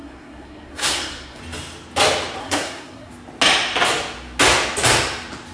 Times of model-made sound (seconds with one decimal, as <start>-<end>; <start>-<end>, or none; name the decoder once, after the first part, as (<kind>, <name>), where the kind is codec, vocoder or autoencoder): 0.0-1.4 (codec, SNAC); 2.4-3.1